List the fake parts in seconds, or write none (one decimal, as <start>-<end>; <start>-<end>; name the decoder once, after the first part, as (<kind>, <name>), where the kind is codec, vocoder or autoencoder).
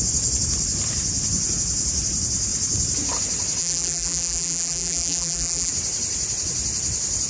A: 3.6-5.7 (vocoder, BigVGAN v2)